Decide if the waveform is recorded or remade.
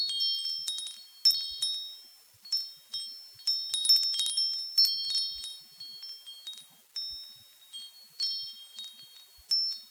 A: recorded